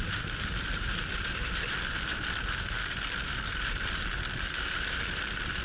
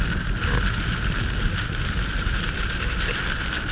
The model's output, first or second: first